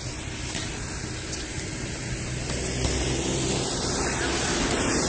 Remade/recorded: recorded